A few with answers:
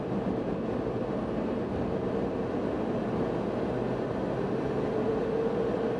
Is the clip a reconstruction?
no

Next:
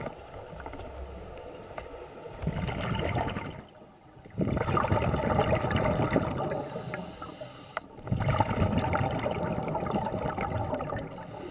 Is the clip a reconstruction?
no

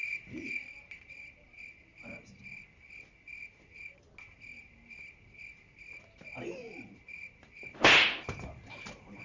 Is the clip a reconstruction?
no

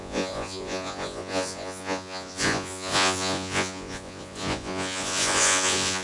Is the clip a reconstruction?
yes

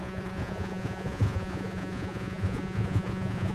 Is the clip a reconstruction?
yes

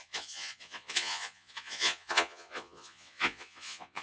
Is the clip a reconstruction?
yes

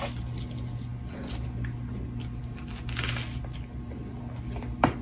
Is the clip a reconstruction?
no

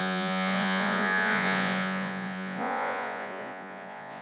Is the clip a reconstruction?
yes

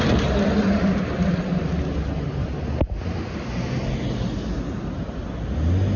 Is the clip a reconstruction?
no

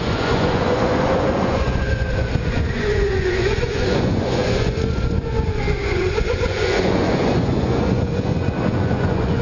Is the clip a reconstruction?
yes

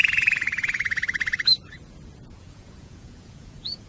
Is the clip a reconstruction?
yes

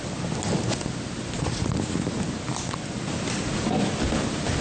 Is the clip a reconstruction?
no